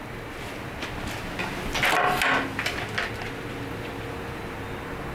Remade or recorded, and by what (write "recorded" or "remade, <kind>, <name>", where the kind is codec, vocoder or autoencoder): recorded